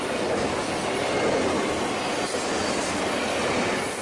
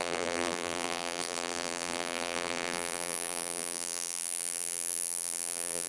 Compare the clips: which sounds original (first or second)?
first